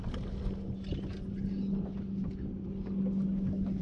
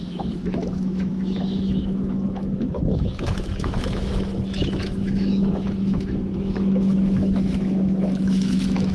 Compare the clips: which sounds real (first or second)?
first